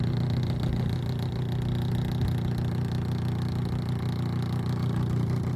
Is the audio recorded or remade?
recorded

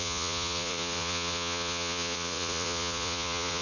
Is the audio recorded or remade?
remade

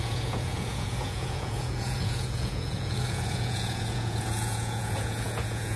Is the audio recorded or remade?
remade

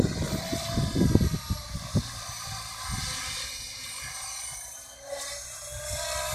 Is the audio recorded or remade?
recorded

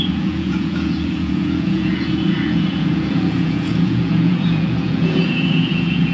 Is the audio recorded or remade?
remade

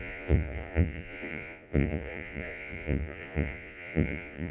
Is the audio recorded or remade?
remade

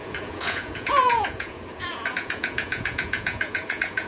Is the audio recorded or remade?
remade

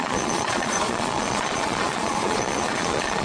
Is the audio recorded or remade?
remade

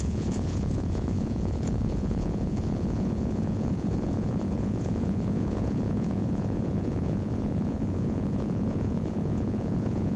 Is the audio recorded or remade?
remade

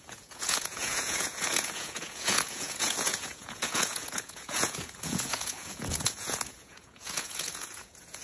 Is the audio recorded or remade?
remade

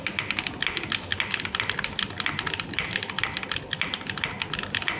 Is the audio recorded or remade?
recorded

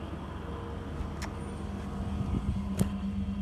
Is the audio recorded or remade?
recorded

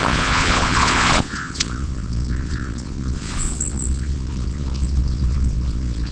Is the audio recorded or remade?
remade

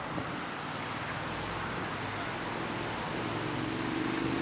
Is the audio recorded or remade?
recorded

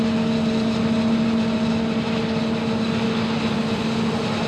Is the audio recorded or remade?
recorded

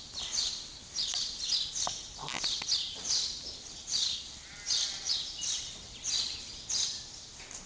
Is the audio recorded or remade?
recorded